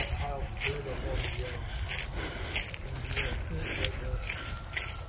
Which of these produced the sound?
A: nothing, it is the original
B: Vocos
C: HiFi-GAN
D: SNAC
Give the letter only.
A